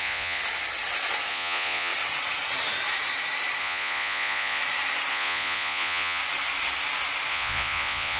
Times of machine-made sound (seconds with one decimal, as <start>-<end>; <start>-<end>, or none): 0.0-0.4; 1.3-1.9; 3.6-4.6; 5.1-6.2; 7.3-8.2